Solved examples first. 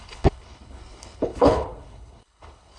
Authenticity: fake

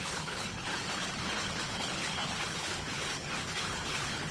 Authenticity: fake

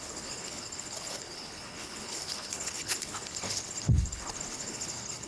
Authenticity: fake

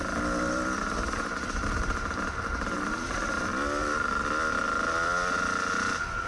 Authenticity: real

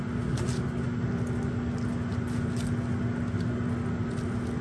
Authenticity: real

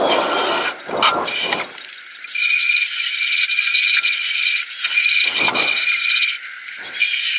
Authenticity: real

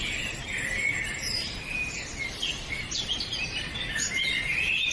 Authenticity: real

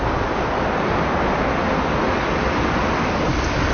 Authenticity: real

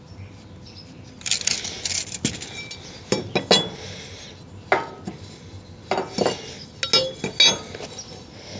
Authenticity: real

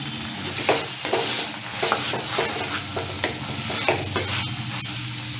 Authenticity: real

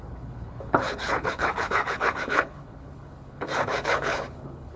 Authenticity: fake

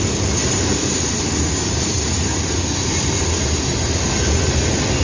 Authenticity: real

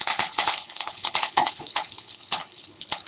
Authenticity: fake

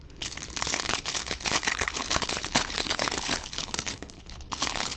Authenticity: fake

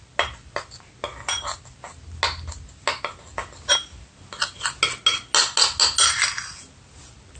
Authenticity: real